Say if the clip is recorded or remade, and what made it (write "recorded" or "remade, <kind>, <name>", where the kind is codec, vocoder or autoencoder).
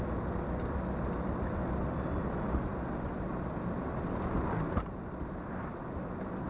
recorded